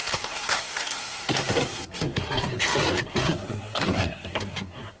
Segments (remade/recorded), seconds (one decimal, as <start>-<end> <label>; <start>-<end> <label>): 0.0-5.0 remade